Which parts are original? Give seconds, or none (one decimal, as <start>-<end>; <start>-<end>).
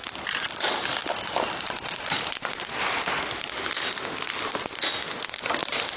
0.0-6.0